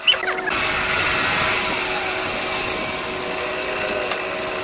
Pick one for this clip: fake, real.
real